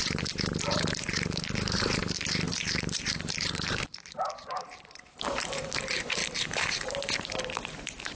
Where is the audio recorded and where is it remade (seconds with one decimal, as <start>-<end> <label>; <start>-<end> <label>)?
0.0-6.2 remade; 6.2-7.4 recorded; 7.4-8.2 remade